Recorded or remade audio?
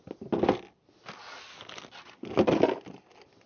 recorded